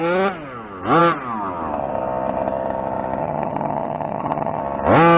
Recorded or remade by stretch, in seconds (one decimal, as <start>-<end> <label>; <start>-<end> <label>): 0.0-3.2 recorded; 3.2-4.6 remade; 4.6-5.2 recorded